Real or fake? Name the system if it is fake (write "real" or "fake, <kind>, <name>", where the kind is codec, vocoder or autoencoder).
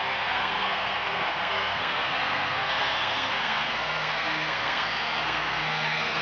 fake, codec, SNAC